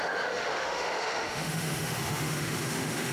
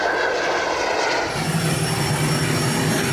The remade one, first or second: first